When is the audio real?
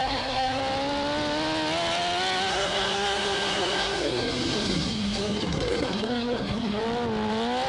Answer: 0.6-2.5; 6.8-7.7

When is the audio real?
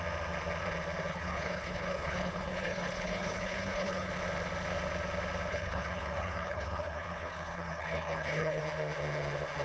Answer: 0.0-1.1; 4.1-5.5; 8.6-9.6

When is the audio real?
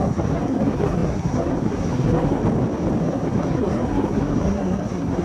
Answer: 2.4-3.0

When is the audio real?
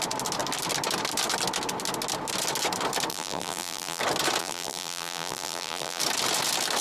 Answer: 0.0-3.1; 4.0-4.4; 6.0-6.8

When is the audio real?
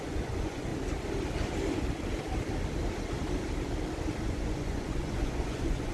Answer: 0.7-4.2